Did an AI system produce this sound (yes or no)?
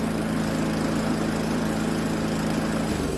no